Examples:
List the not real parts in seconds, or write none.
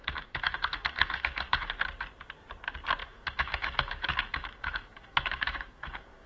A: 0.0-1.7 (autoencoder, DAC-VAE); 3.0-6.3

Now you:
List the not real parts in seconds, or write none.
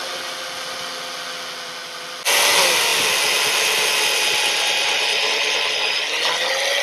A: none